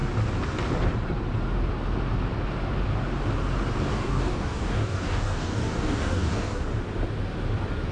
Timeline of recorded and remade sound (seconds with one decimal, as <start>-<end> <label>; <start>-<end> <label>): 0.0-3.9 recorded; 3.9-6.6 remade; 6.6-7.9 recorded